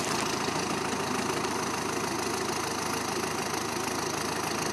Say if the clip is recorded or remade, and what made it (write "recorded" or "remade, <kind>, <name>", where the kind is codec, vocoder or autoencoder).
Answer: recorded